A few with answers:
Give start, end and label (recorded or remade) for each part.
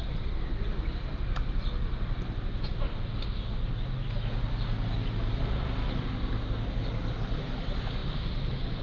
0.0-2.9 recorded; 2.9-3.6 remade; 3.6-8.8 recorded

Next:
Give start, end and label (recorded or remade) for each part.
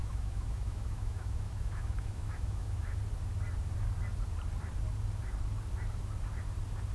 0.0-3.0 remade; 3.0-6.9 recorded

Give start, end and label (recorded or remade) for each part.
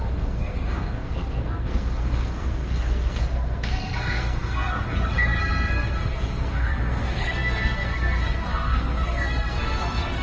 0.0-10.2 remade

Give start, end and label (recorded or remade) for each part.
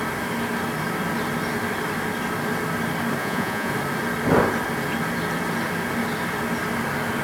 0.0-3.2 recorded; 3.2-3.7 remade; 3.7-7.2 recorded